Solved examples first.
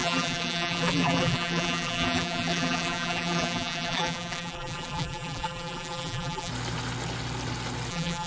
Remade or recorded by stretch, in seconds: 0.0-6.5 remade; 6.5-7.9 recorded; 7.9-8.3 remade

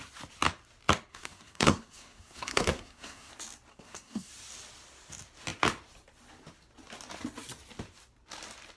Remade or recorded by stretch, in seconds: 0.0-1.1 recorded; 1.1-3.3 remade; 3.3-3.7 recorded; 3.7-4.3 remade; 4.3-8.8 recorded

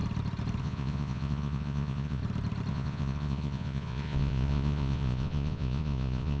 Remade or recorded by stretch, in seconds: 0.0-0.6 recorded; 0.6-2.2 remade; 2.2-2.7 recorded; 2.7-6.4 remade

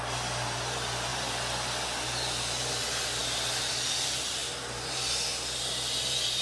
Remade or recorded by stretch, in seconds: 0.0-6.4 recorded

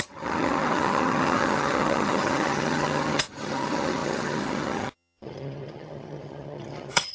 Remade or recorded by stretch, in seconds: 0.0-7.1 remade

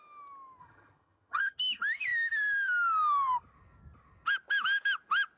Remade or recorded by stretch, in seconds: 0.0-0.6 recorded; 0.6-1.4 remade; 1.4-5.4 recorded